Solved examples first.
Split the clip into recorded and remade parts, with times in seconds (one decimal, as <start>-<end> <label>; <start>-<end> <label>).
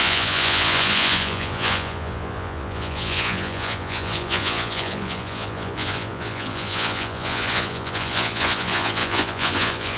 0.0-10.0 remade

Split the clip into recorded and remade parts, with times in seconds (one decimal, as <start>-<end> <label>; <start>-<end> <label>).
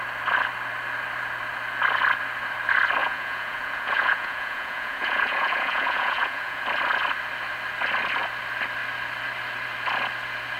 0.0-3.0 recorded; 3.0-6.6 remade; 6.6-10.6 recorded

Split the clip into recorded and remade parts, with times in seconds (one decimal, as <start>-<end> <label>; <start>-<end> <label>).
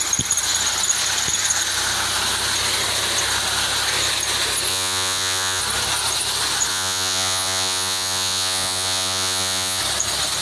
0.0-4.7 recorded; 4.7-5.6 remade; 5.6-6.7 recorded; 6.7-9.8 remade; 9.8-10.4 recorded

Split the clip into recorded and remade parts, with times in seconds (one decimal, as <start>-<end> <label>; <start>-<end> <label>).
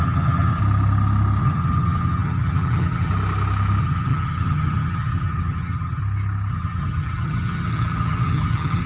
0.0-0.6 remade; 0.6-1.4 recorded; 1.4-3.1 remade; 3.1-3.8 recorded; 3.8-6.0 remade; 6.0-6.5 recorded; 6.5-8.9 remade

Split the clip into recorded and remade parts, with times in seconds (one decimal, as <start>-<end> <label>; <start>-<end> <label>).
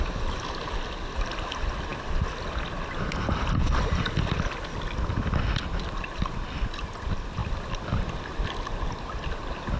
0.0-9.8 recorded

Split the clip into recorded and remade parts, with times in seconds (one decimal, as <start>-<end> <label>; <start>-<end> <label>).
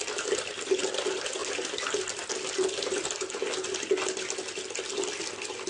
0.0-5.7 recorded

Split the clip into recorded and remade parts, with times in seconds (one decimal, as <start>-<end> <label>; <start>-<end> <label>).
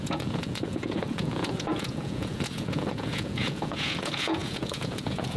0.0-5.4 remade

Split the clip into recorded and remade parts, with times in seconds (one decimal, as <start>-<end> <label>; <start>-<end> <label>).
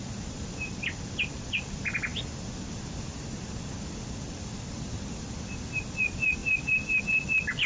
0.0-7.7 recorded